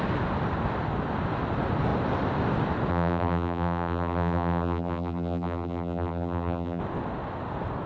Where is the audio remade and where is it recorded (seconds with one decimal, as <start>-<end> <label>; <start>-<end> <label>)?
0.0-2.9 recorded; 2.9-6.8 remade; 6.8-7.9 recorded